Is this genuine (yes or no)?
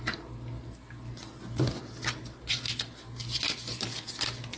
yes